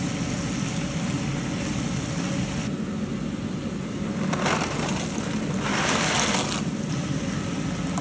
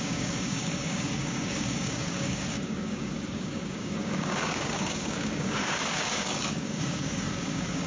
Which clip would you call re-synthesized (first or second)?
second